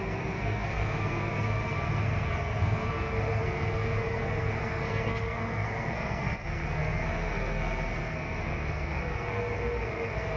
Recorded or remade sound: remade